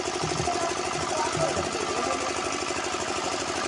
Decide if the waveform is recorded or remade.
recorded